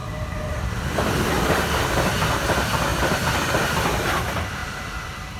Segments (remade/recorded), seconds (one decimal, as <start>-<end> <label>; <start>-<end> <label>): 0.0-1.8 remade; 1.8-2.9 recorded; 2.9-3.6 remade; 3.6-4.6 recorded; 4.6-5.4 remade